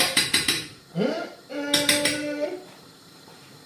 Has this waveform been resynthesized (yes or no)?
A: yes